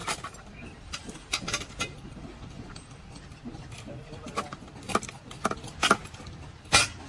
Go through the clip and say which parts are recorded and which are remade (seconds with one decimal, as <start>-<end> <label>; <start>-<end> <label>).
0.0-4.3 remade; 4.3-7.1 recorded

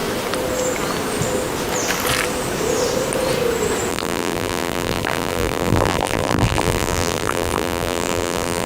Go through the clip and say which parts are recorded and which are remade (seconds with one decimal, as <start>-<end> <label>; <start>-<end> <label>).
0.0-3.9 recorded; 3.9-8.7 remade

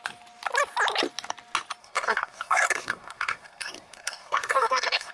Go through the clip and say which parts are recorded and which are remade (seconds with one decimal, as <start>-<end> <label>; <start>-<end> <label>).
0.0-1.8 recorded; 1.8-5.1 remade

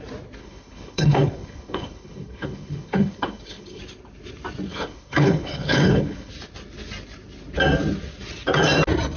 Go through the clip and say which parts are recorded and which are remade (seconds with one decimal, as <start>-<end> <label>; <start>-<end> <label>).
0.0-0.4 recorded; 0.4-3.8 remade; 3.8-4.7 recorded; 4.7-6.3 remade; 6.3-9.2 recorded

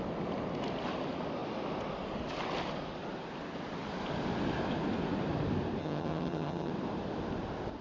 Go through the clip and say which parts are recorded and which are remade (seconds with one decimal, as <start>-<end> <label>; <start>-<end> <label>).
0.0-5.8 recorded; 5.8-6.7 remade; 6.7-7.8 recorded

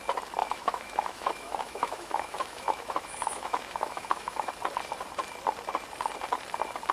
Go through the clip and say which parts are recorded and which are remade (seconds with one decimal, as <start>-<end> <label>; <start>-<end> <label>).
0.0-0.4 recorded; 0.4-4.5 remade; 4.5-6.9 recorded